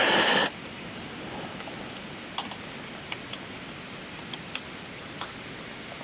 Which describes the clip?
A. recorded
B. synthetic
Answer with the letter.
A